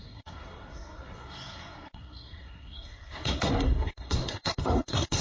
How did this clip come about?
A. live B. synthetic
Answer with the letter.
B